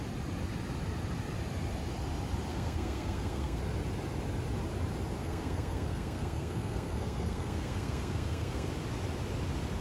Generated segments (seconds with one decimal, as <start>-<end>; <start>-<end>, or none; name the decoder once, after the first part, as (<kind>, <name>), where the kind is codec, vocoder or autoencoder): 2.5-3.6 (codec, SNAC); 5.2-8.7